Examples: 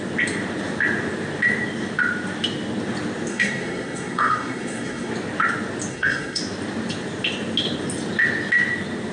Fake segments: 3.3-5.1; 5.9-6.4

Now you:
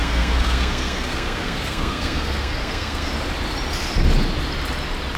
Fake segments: 0.0-3.1

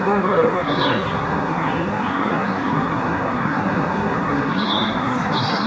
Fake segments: 0.0-5.7